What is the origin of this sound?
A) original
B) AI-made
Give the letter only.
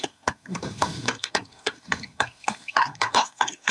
B